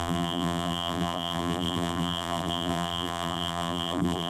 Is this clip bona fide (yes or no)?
no